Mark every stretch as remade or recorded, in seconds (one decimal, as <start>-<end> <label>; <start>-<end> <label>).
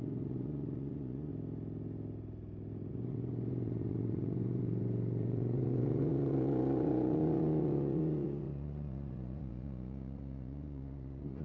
0.0-1.3 remade; 1.3-2.9 recorded; 2.9-11.4 remade